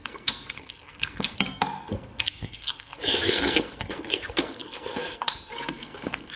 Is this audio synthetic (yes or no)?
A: yes